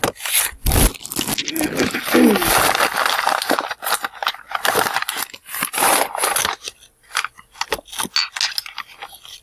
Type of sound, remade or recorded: recorded